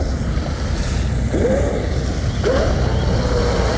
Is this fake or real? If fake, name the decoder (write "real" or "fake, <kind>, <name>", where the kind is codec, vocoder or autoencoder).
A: real